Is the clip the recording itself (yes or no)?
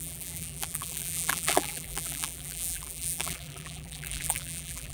no